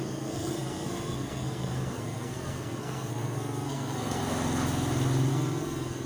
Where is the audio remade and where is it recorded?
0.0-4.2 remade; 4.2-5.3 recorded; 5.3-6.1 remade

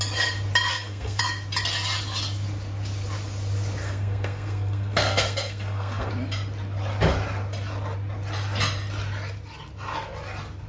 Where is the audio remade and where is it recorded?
0.0-0.7 recorded; 0.7-1.2 remade; 1.2-3.8 recorded; 3.8-6.1 remade; 6.1-10.7 recorded

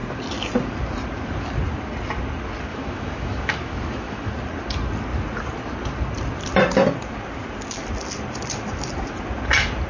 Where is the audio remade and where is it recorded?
0.0-2.7 recorded; 2.7-4.3 remade; 4.3-9.9 recorded